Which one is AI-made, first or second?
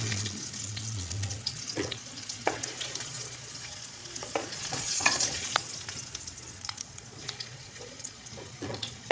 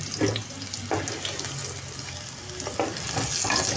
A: first